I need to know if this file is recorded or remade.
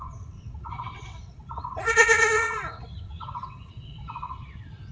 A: remade